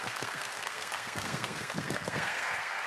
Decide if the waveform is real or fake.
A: fake